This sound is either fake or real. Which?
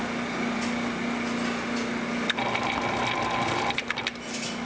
real